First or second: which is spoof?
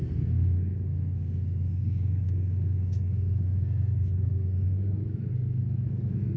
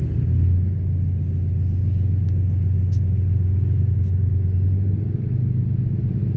first